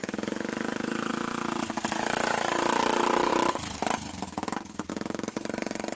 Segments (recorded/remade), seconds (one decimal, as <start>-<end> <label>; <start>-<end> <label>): 0.0-1.1 remade; 1.1-1.6 recorded; 1.6-6.0 remade